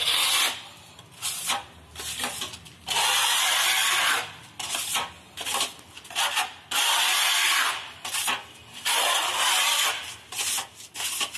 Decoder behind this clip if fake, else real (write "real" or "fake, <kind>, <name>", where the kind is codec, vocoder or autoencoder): real